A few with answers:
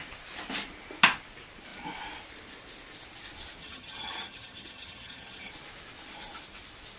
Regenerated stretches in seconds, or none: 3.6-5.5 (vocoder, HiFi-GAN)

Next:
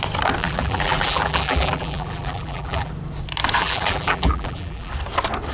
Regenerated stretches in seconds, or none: 0.4-2.9 (vocoder, BigVGAN v2); 3.6-4.9

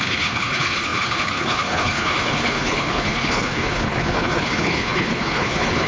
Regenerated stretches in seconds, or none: 0.0-5.9 (codec, HILCodec)

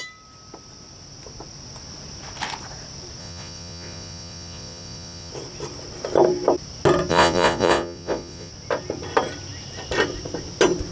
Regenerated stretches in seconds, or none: 3.2-5.3 (vocoder, Vocos); 7.1-8.5